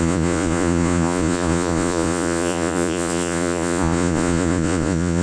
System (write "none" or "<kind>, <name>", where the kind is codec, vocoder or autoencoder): vocoder, Vocos